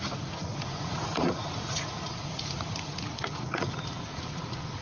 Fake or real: fake